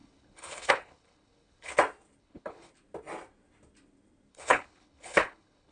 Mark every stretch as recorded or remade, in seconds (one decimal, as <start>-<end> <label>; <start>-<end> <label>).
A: 0.0-1.7 remade; 1.7-2.2 recorded; 2.2-2.7 remade; 2.7-4.3 recorded; 4.3-5.7 remade